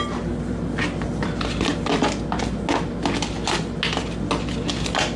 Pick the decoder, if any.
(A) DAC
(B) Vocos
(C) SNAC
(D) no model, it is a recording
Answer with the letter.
D